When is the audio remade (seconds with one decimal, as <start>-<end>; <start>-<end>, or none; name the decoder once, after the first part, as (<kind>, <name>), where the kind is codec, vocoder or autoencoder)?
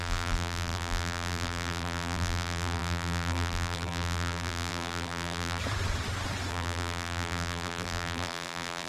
0.0-5.6 (vocoder, BigVGAN v2); 6.5-8.9